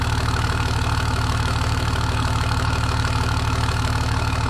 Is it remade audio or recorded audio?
remade